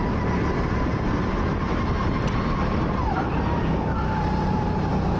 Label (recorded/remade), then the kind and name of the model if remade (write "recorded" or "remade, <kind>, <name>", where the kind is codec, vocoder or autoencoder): recorded